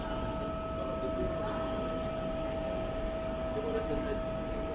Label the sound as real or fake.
real